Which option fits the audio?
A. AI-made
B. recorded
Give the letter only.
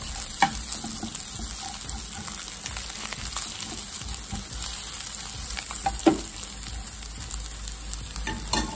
B